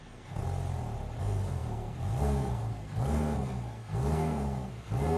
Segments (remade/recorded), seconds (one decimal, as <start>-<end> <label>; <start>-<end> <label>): 0.0-0.4 remade; 0.4-1.2 recorded; 1.2-5.2 remade